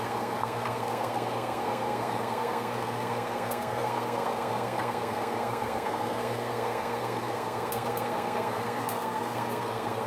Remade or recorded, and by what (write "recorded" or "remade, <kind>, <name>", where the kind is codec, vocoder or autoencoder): remade, codec, SNAC